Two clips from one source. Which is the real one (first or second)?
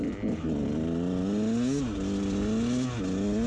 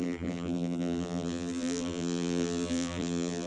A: first